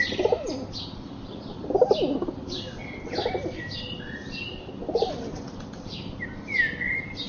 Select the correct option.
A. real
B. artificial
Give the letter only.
A